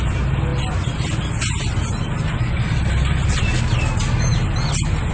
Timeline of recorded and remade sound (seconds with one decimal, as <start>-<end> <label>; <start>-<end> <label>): 0.0-5.1 recorded